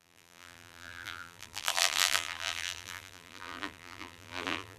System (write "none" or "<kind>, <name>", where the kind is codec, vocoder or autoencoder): vocoder, BigVGAN v2